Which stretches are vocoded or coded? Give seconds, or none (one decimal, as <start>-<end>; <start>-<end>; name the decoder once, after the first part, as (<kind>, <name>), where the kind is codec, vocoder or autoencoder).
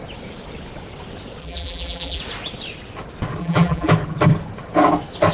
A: 1.4-2.2 (vocoder, BigVGAN v2); 3.4-3.9